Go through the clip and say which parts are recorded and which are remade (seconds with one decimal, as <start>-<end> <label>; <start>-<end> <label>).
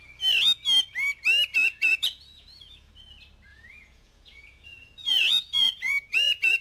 0.0-1.6 recorded; 1.6-2.9 remade; 2.9-3.5 recorded; 3.5-6.6 remade